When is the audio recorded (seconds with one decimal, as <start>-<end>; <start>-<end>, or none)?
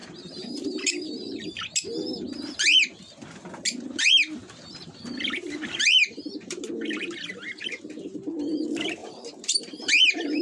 1.6-4.4; 5.0-9.0; 9.9-10.4